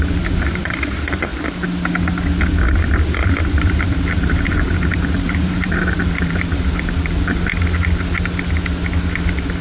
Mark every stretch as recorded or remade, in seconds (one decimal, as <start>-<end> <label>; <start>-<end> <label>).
0.0-1.3 remade; 1.3-2.9 recorded; 2.9-7.5 remade; 7.5-9.6 recorded